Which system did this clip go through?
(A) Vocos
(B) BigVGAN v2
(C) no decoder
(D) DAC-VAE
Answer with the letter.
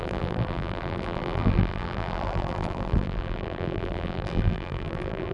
B